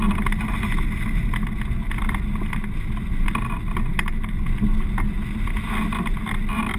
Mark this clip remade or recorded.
recorded